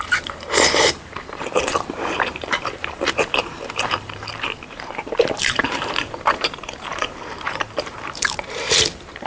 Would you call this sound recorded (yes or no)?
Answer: no